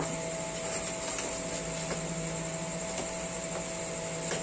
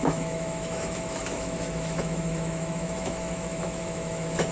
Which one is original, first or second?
first